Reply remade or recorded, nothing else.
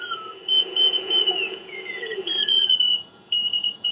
remade